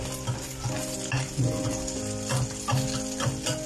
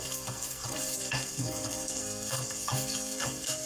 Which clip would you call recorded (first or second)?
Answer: first